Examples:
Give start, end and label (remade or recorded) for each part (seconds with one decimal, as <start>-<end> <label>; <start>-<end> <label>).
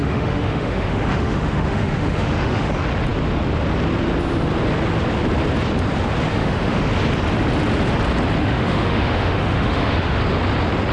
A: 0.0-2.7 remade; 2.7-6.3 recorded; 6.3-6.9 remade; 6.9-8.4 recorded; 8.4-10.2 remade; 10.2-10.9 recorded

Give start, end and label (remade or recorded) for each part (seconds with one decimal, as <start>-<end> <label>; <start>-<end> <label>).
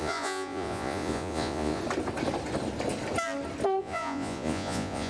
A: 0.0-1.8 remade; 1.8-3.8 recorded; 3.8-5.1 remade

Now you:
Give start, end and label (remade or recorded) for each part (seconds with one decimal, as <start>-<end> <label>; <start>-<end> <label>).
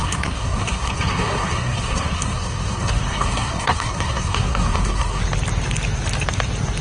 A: 0.0-5.2 remade; 5.2-6.8 recorded